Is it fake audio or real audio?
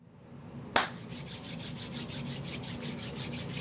real